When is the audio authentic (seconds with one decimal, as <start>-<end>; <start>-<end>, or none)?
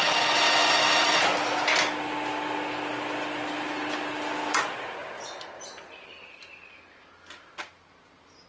0.0-5.0; 5.6-8.5